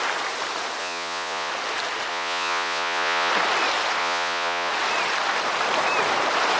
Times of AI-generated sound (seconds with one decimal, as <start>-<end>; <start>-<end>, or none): 0.8-1.5; 2.1-3.3; 4.0-4.7